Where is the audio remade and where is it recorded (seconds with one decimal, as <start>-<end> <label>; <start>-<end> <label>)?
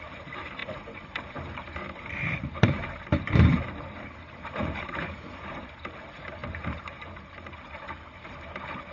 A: 0.0-8.9 remade